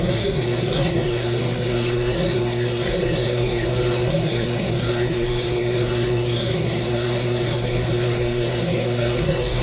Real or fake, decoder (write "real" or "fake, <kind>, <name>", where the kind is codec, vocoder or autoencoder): fake, codec, SNAC